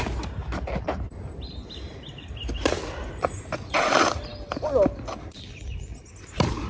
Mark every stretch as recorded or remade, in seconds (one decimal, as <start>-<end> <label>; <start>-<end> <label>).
0.0-6.7 recorded